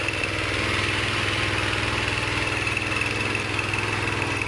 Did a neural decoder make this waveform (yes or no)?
no